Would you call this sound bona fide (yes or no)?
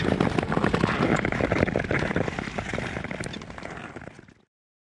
yes